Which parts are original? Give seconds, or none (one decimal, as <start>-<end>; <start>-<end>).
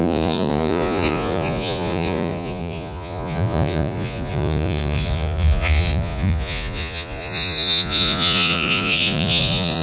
none